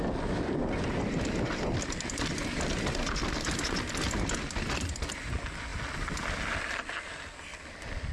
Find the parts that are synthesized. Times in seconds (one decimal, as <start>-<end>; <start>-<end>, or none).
none